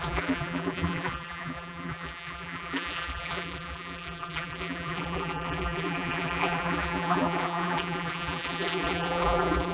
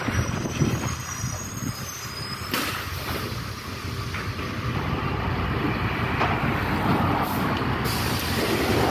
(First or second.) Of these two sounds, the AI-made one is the first